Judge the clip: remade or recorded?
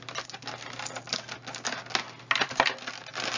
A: recorded